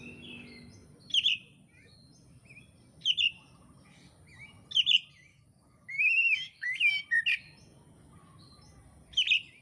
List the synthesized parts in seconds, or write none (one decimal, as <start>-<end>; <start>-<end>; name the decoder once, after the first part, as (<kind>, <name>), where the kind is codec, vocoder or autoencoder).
5.3-6.9 (codec, DAC)